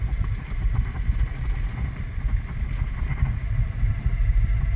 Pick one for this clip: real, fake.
real